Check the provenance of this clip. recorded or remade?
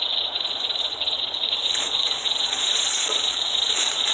remade